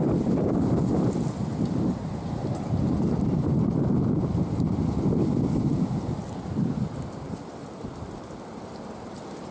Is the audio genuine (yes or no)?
no